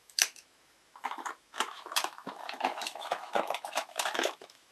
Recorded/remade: remade